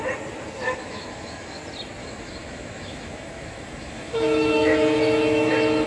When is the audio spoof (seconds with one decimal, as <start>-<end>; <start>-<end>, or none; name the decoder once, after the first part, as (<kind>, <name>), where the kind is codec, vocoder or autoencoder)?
0.8-1.6 (autoencoder, DAC-VAE); 2.0-5.5